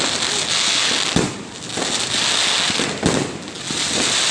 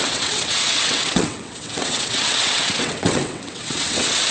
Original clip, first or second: first